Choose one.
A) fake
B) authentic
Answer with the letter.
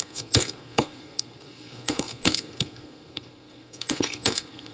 A